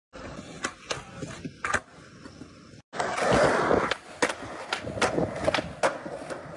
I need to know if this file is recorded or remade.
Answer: recorded